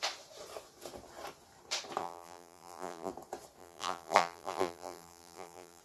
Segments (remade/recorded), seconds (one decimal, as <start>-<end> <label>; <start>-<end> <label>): 0.0-2.0 recorded; 2.0-3.1 remade; 3.1-3.6 recorded; 3.6-5.8 remade